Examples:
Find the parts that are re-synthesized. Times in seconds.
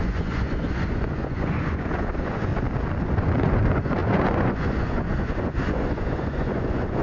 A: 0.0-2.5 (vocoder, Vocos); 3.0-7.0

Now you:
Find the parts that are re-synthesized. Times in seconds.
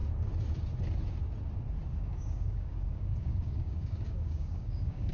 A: 1.9-5.1 (codec, DAC)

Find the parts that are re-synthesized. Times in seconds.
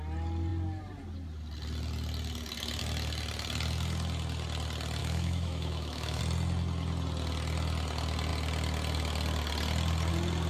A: 5.0-6.2 (autoencoder, DAC-VAE)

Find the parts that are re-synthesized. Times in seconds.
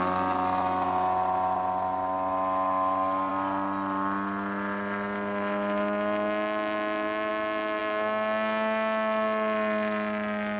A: none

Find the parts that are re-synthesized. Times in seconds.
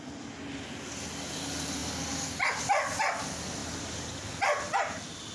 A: none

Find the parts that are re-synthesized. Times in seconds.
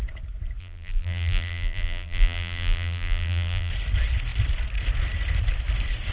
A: 0.6-3.7 (vocoder, BigVGAN v2)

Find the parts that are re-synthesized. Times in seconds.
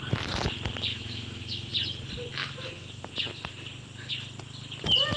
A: 0.9-1.7 (autoencoder, DAC-VAE); 2.4-3.1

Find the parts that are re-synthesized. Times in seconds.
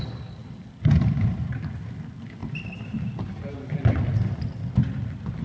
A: none